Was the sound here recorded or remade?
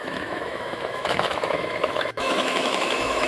remade